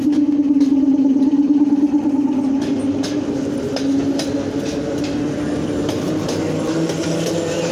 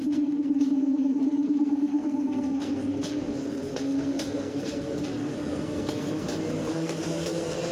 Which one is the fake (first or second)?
second